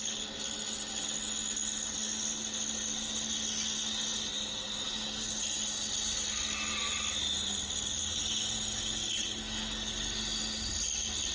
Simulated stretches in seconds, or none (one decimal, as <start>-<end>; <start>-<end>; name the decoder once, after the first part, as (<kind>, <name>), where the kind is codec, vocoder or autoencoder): none